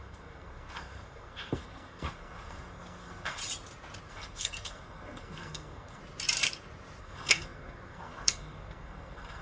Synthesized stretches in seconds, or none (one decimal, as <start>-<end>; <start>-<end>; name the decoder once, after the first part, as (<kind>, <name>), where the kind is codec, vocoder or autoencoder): 0.0-3.4 (codec, SNAC); 4.1-6.0; 7.0-9.4